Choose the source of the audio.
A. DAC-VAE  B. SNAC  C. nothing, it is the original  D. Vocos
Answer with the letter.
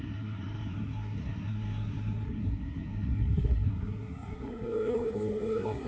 B